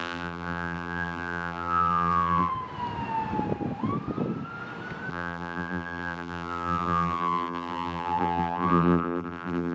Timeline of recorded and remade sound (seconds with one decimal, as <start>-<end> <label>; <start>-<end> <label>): 0.0-2.5 remade; 2.5-5.1 recorded; 5.1-9.7 remade